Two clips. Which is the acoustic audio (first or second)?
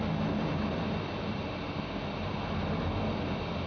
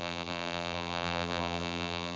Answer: first